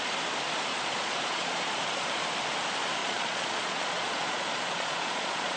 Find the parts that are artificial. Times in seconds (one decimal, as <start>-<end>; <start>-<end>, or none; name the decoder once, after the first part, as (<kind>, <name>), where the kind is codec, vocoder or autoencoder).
0.7-2.2 (vocoder, Vocos); 3.0-5.6